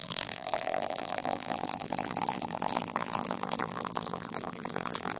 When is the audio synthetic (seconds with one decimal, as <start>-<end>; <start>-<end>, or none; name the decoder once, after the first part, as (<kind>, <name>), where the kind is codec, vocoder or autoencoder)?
0.0-5.2 (vocoder, BigVGAN v2)